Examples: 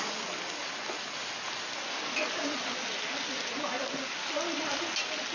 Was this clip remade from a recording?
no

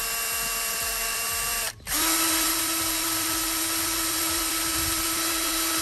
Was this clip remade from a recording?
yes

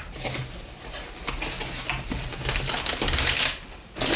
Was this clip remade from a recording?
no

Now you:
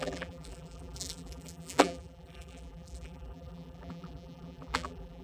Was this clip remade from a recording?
yes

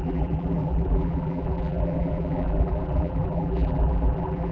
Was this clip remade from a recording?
yes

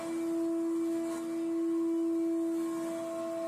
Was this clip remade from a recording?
no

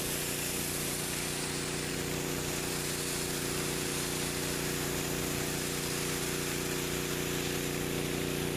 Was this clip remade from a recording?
no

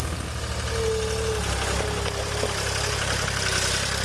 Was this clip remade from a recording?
no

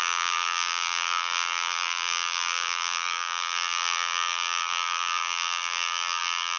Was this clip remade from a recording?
yes